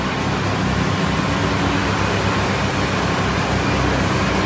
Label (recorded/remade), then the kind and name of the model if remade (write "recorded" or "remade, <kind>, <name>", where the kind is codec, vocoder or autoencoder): recorded